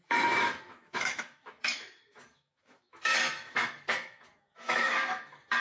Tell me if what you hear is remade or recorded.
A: remade